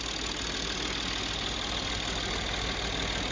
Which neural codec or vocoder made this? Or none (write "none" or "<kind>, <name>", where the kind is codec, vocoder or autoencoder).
none